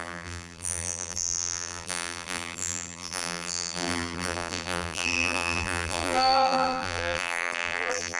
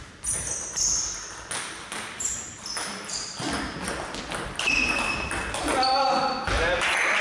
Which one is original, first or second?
second